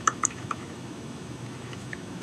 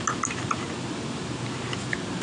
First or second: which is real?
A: second